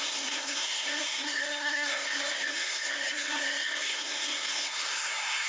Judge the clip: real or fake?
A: fake